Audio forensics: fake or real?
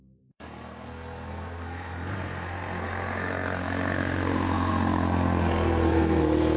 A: fake